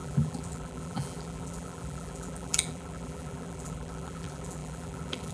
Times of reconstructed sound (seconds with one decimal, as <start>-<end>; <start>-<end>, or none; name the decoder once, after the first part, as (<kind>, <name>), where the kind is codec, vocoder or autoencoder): 0.0-5.3 (vocoder, BigVGAN v2)